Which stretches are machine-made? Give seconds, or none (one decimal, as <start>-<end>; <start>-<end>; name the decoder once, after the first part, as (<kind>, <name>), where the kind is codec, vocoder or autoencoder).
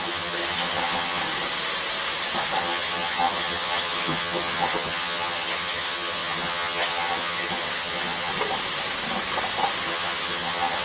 0.0-1.2 (vocoder, HiFi-GAN); 2.6-8.3; 9.8-10.8